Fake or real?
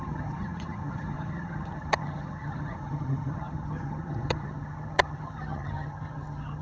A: fake